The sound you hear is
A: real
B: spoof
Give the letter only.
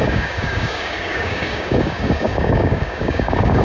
B